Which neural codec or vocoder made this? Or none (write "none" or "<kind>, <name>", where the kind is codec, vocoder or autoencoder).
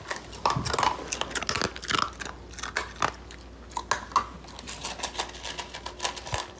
none